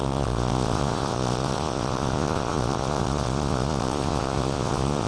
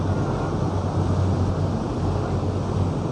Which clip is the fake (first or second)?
first